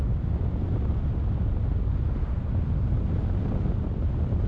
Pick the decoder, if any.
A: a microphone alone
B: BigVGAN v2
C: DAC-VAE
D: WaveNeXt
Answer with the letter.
A